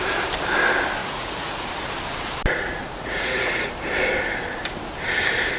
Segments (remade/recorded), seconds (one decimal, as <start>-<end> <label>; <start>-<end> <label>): 0.0-1.0 recorded; 1.0-1.7 remade; 1.7-2.8 recorded; 2.8-3.7 remade; 3.7-5.6 recorded

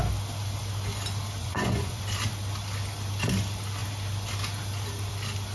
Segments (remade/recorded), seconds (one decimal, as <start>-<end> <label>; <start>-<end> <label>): 0.0-1.4 recorded; 1.4-2.0 remade; 2.0-5.5 recorded

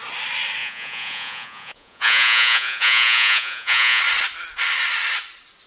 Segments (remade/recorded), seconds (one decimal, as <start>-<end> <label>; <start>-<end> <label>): 0.0-0.6 recorded; 0.6-4.0 remade; 4.0-5.7 recorded

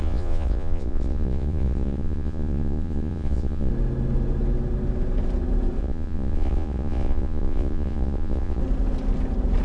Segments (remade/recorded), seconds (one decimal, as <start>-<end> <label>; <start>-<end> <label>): 0.0-3.7 remade; 3.7-5.8 recorded; 5.8-8.6 remade; 8.6-9.6 recorded

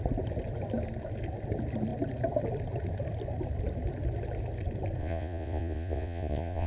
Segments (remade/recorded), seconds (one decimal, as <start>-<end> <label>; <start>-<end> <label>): 0.0-5.0 recorded; 5.0-6.7 remade

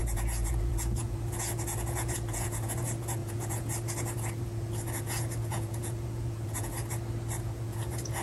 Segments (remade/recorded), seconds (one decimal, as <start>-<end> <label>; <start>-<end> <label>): 0.0-6.7 remade; 6.7-7.4 recorded; 7.4-8.2 remade

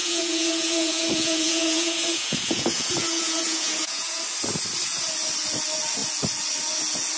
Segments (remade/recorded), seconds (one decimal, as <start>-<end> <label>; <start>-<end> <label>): 0.0-4.2 remade; 4.2-7.2 recorded